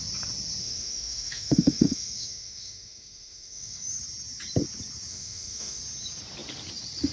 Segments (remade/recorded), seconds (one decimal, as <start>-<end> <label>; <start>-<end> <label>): 0.0-0.6 recorded; 0.6-3.9 remade; 3.9-5.1 recorded; 5.1-5.8 remade; 5.8-7.1 recorded